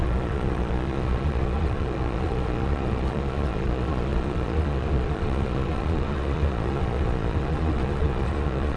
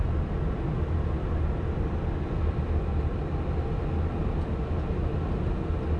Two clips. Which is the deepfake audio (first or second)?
first